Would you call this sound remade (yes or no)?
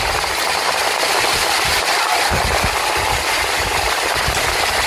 yes